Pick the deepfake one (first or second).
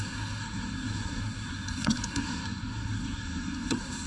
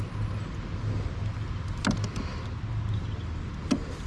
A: first